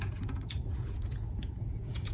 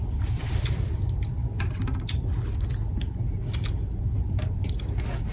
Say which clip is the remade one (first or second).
first